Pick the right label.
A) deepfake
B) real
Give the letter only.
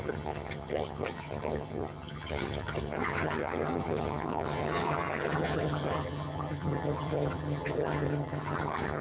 A